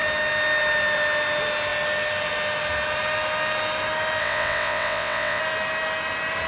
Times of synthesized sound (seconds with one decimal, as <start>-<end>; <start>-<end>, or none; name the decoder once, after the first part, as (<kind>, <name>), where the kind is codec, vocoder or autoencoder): 4.2-5.4 (vocoder, WaveNeXt)